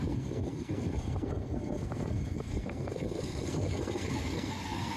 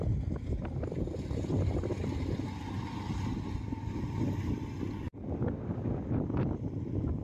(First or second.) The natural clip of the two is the second